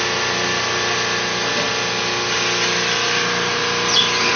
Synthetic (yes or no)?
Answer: no